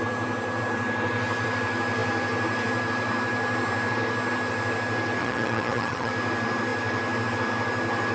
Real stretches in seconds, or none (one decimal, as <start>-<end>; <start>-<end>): 0.0-5.2; 6.1-8.1